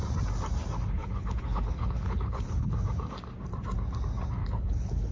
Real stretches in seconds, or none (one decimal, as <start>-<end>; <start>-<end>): 0.0-1.0; 2.7-4.4